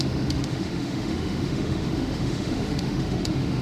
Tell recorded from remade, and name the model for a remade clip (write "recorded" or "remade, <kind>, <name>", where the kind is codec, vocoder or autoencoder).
remade, autoencoder, DAC-VAE